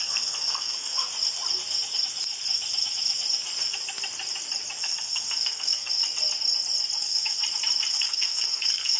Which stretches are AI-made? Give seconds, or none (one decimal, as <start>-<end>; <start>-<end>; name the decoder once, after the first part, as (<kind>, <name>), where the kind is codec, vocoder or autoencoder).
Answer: 0.0-1.0 (codec, SNAC); 4.8-6.0; 7.0-7.4; 7.9-9.0